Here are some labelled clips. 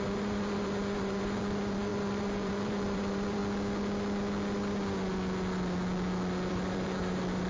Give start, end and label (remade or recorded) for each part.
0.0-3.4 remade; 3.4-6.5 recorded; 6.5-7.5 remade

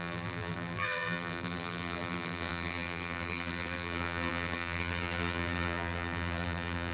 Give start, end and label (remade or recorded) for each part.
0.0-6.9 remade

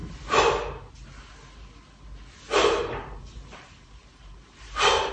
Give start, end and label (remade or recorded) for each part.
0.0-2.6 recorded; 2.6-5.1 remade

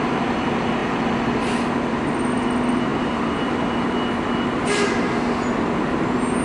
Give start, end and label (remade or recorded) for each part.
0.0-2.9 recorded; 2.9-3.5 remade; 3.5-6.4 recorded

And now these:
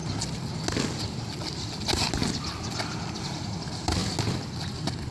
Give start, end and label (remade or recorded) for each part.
0.0-3.1 recorded; 3.1-4.0 remade; 4.0-5.1 recorded

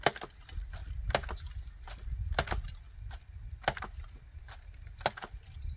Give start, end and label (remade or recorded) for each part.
0.0-5.8 recorded

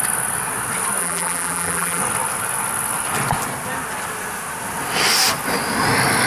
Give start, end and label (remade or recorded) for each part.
0.0-1.0 recorded; 1.0-2.0 remade; 2.0-6.3 recorded